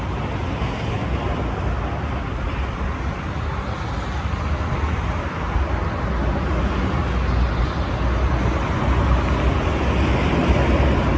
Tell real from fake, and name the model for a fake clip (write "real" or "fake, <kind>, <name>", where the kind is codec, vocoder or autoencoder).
real